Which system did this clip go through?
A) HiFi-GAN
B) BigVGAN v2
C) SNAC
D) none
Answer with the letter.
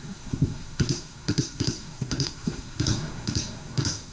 C